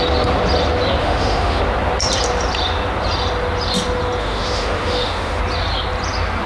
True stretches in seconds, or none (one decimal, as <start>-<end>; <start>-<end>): 0.0-1.0; 1.6-4.2; 5.4-6.5